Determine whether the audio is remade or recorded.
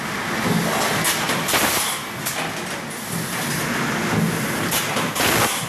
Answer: recorded